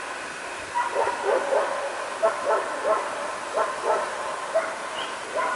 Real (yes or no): yes